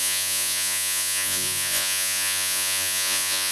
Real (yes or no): no